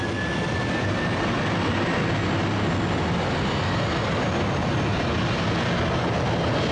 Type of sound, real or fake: real